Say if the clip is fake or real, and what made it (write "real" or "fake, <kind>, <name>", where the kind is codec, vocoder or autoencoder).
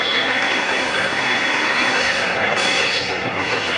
fake, codec, SNAC